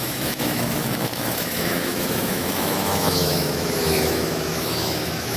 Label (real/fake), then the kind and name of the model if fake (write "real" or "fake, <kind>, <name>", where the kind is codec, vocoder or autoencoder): fake, autoencoder, DAC-VAE